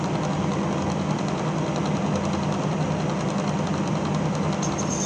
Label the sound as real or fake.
real